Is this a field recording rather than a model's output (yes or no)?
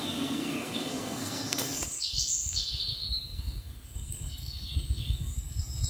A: no